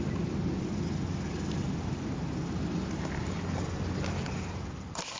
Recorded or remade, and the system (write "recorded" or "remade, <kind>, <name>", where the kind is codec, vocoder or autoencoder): recorded